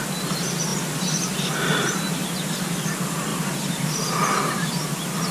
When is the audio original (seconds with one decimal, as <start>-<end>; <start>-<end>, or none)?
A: 0.0-5.3